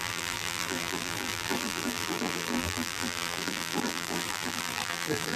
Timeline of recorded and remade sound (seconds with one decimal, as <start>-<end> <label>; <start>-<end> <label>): 0.0-5.4 remade